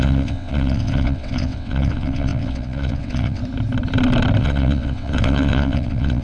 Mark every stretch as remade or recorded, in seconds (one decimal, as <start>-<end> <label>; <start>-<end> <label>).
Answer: 0.0-3.4 remade; 3.4-4.4 recorded; 4.4-6.2 remade